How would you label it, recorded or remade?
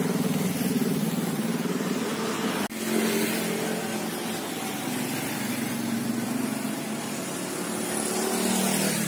recorded